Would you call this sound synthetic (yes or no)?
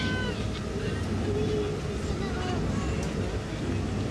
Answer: no